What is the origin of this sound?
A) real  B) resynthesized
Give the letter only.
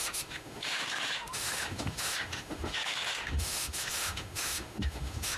B